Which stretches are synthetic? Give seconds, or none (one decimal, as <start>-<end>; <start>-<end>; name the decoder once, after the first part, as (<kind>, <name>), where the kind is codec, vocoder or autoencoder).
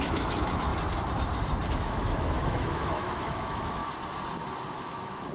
0.0-0.7 (autoencoder, DAC-VAE); 1.7-3.8; 4.7-5.3